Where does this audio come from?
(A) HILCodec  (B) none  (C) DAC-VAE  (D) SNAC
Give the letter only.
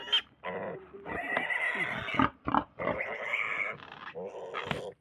B